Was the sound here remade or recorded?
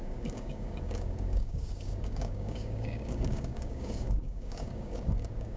remade